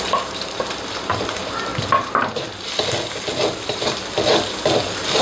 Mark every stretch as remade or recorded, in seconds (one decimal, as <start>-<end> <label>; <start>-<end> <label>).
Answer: 0.0-1.7 remade; 1.7-4.8 recorded; 4.8-5.2 remade